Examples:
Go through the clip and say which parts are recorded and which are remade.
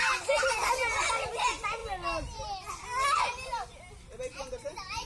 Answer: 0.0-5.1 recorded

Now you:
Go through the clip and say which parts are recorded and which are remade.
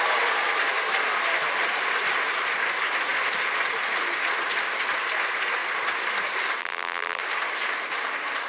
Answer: 0.0-6.6 recorded; 6.6-7.2 remade; 7.2-8.5 recorded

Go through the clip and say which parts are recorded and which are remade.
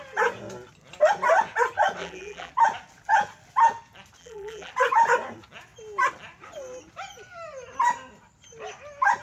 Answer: 0.0-2.0 recorded; 2.0-2.5 remade; 2.5-4.2 recorded; 4.2-4.7 remade; 4.7-9.2 recorded